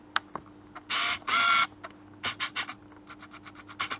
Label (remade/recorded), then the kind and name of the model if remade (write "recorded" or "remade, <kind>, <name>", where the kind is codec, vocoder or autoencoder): recorded